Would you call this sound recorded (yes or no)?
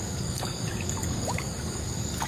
no